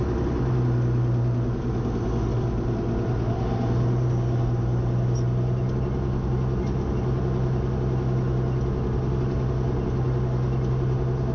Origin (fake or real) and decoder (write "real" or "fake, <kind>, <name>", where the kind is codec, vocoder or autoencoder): real